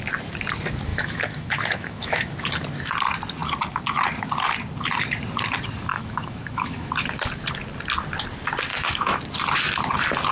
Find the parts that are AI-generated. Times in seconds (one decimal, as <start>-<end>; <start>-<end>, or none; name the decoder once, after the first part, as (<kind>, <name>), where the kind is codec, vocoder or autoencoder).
0.9-2.3 (autoencoder, DAC-VAE); 5.9-6.9; 8.7-9.2